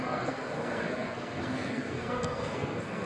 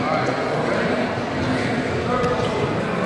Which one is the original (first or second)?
second